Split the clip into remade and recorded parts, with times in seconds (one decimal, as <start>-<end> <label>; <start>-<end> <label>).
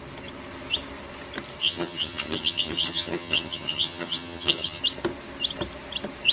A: 0.0-1.6 recorded; 1.6-4.8 remade; 4.8-6.3 recorded